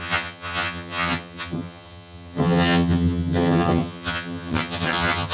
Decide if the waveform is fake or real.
fake